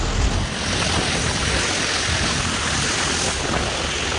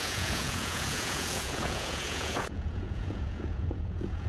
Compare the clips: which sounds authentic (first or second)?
first